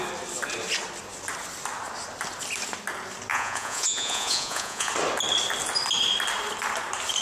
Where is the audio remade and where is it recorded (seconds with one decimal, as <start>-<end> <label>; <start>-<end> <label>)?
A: 0.0-3.3 recorded; 3.3-4.9 remade; 4.9-7.2 recorded